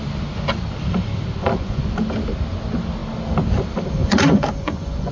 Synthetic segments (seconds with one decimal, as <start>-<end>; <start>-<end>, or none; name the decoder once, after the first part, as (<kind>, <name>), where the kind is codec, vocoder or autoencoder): 1.4-1.9 (vocoder, Vocos); 4.0-5.1